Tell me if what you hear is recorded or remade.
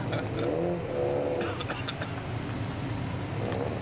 recorded